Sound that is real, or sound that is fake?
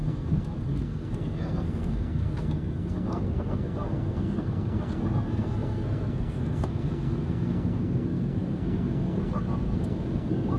fake